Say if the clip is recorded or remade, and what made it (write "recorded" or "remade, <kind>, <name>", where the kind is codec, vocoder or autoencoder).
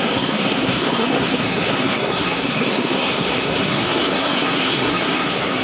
remade, codec, SNAC